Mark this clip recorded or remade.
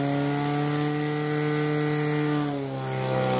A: recorded